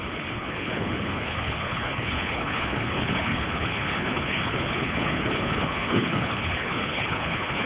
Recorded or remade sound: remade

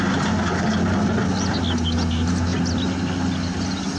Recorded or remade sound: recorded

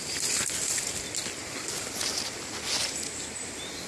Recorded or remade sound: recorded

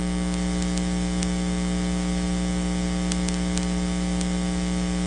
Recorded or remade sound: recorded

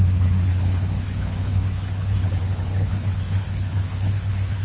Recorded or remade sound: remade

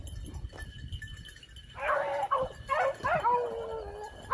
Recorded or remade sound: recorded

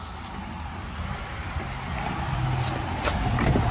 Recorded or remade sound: recorded